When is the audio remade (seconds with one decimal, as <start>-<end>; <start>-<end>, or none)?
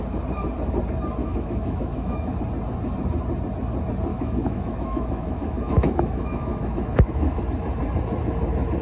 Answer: 1.2-2.4; 4.1-7.4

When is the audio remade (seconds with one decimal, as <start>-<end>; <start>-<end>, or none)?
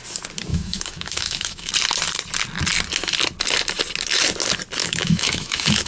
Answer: 0.5-1.7; 4.8-5.9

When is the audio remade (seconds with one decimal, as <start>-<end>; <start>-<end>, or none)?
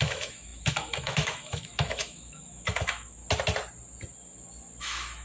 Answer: 0.0-3.2; 4.8-5.2